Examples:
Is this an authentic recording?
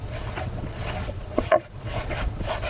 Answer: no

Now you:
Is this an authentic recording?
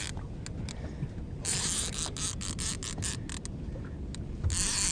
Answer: yes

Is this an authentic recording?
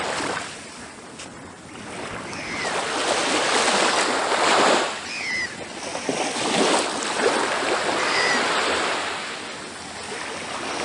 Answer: yes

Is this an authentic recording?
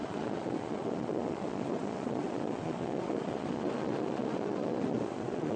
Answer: no